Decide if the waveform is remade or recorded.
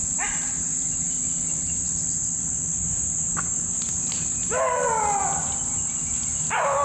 recorded